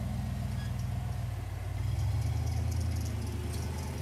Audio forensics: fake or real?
real